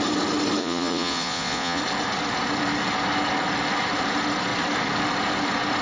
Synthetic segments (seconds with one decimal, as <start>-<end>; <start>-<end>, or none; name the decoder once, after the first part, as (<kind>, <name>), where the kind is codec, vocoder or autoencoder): 0.6-1.8 (vocoder, Vocos)